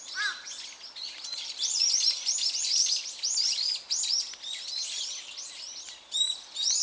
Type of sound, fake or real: real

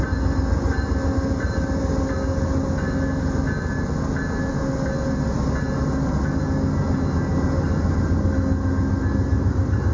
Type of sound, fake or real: real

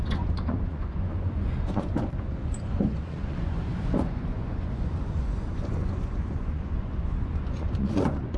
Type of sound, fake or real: fake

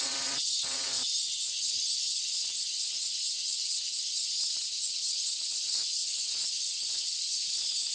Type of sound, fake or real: fake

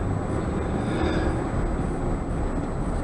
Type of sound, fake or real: real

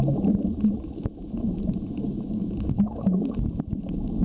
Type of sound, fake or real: fake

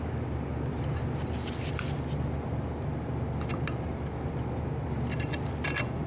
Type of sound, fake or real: real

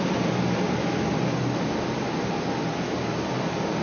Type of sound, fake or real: real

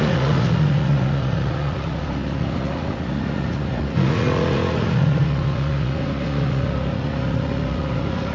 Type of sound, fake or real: fake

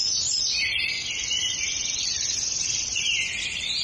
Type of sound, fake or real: real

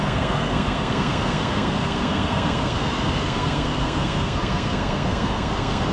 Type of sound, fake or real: fake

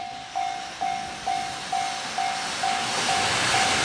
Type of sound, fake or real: real